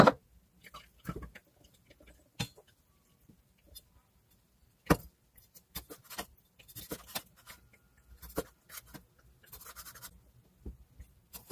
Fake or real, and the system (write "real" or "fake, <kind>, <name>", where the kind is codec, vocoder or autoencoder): real